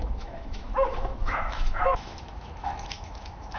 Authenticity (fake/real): fake